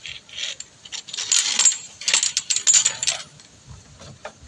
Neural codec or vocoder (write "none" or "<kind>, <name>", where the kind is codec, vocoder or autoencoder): none